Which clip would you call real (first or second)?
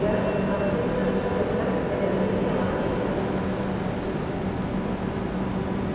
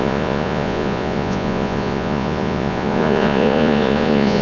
first